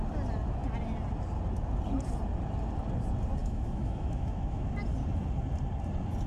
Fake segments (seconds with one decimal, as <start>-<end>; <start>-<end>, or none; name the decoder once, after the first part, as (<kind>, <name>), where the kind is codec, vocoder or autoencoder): 3.4-4.7 (autoencoder, DAC-VAE)